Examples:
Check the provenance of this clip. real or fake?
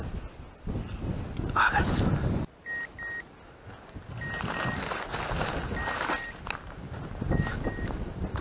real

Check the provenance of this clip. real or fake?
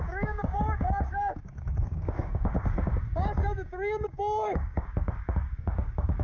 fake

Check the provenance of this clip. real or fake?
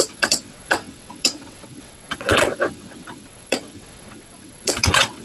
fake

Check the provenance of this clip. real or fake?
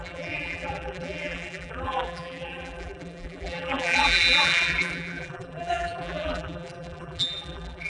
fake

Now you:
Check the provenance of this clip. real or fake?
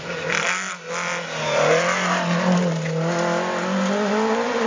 real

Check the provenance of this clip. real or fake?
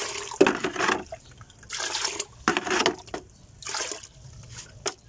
real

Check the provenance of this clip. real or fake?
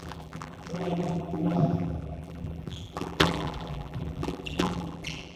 fake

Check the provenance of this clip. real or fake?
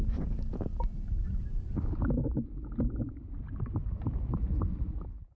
real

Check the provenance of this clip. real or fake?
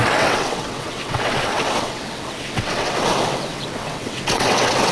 fake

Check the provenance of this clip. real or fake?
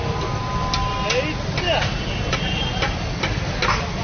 real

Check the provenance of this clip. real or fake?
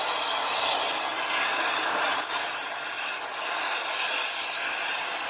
real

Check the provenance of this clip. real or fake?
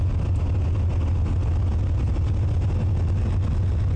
real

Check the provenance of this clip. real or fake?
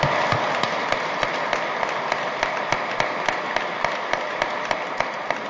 real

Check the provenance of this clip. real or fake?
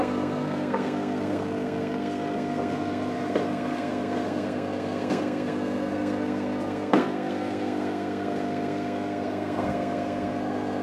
fake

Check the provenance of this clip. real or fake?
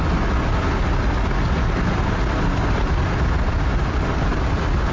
real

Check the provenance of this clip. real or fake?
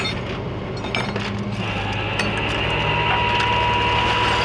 real